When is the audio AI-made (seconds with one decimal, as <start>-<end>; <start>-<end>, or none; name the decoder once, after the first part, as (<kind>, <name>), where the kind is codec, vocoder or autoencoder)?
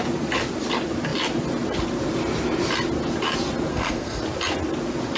3.7-4.2 (codec, SNAC)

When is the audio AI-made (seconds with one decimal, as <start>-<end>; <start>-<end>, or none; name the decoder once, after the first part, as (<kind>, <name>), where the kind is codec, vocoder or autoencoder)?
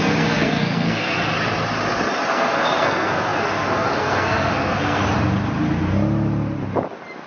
0.0-1.3 (codec, SNAC); 2.3-5.0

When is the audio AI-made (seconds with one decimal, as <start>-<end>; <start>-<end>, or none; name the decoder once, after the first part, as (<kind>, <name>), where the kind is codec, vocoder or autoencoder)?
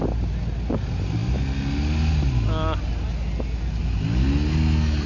none